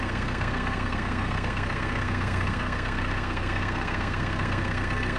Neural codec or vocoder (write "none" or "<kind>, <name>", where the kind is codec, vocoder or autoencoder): codec, SNAC